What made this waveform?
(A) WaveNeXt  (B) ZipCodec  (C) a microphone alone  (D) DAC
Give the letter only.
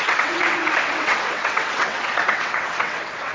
A